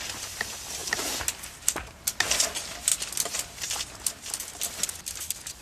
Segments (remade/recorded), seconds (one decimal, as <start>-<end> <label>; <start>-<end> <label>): 0.0-5.6 recorded